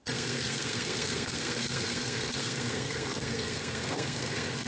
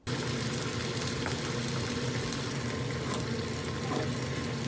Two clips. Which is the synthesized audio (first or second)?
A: first